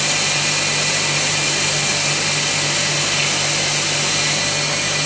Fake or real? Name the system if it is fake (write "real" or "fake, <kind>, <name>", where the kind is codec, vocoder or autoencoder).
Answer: real